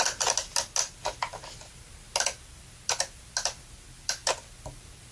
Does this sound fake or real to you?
real